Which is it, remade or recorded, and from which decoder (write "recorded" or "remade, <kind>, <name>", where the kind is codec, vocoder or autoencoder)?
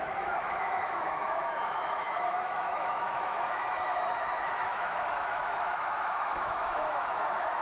remade, autoencoder, DAC-VAE